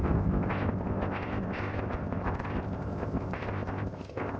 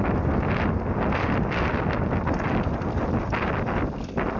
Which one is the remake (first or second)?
first